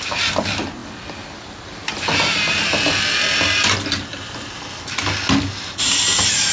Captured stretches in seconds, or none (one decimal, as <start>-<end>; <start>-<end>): 0.0-6.5